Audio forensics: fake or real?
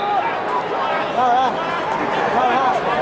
real